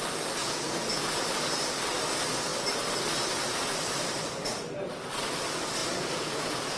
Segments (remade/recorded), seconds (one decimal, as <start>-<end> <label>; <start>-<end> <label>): 0.0-0.4 recorded; 0.4-1.3 remade; 1.3-5.8 recorded; 5.8-6.8 remade